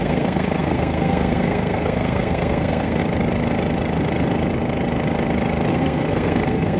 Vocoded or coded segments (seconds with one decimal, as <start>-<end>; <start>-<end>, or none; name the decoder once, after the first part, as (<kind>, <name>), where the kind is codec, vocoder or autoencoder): 0.0-3.0 (codec, SNAC); 5.7-6.8